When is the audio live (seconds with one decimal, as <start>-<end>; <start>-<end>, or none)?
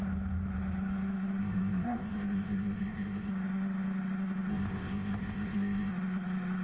0.0-1.4; 3.3-4.5; 5.9-6.6